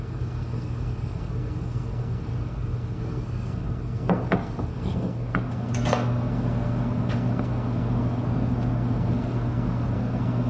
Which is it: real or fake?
fake